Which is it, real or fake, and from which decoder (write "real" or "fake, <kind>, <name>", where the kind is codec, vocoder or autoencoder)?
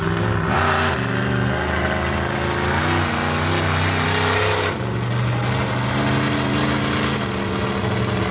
real